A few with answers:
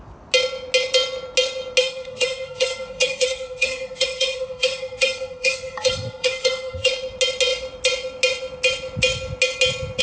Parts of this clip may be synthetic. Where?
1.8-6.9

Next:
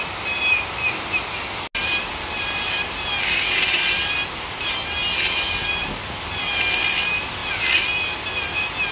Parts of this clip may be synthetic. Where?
none